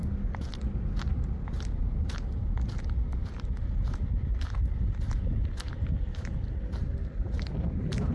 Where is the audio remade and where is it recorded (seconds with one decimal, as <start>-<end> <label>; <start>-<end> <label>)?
0.0-8.1 recorded